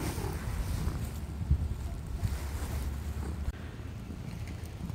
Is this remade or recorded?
recorded